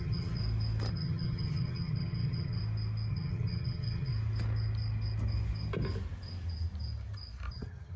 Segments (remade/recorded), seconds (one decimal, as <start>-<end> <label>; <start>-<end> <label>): 0.0-0.4 remade; 0.4-0.9 recorded; 0.9-2.6 remade; 2.6-3.1 recorded; 3.1-4.1 remade; 4.1-7.5 recorded; 7.5-8.0 remade